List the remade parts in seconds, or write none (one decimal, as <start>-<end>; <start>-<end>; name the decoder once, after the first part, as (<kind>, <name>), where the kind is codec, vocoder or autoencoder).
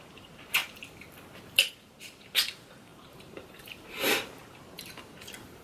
0.0-0.6 (vocoder, BigVGAN v2); 1.7-5.6